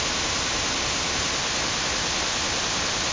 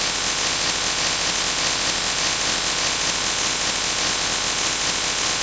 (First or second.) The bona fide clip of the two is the first